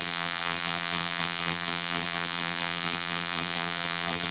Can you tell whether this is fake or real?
fake